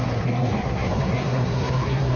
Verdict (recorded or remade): remade